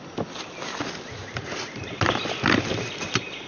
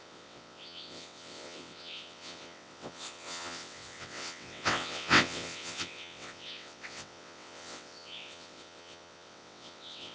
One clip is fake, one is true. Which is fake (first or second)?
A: second